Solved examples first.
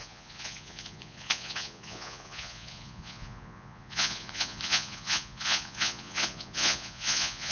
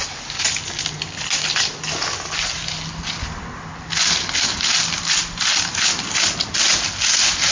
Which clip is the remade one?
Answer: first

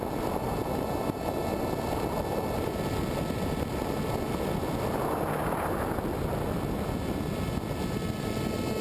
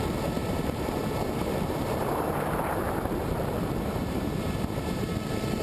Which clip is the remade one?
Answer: second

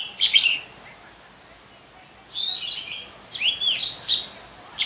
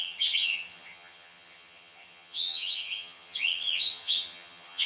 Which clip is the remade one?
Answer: second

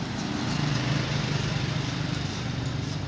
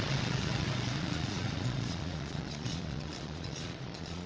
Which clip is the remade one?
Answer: second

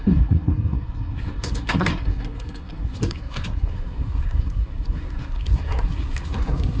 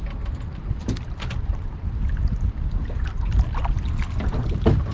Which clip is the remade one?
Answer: first